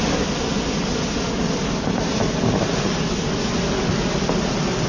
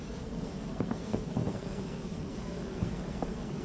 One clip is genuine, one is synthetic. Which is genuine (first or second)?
first